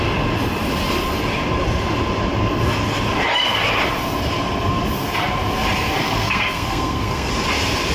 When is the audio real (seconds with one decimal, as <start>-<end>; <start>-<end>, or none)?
0.0-6.0; 7.3-7.9